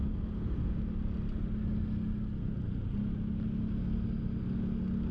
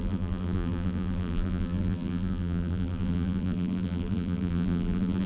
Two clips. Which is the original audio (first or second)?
first